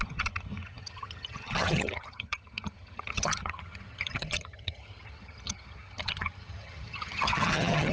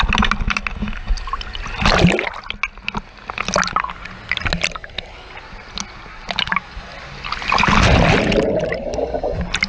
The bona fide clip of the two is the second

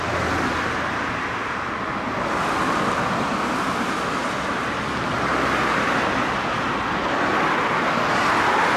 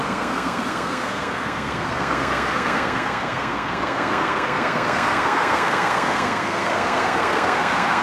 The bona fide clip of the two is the first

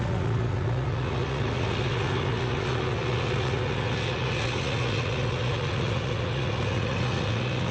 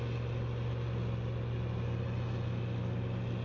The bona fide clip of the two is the second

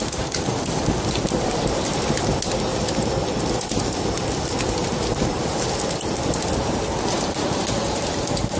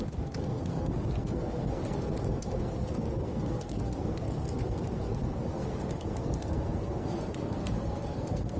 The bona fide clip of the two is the first